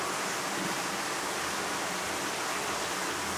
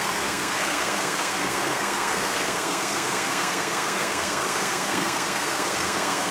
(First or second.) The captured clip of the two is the first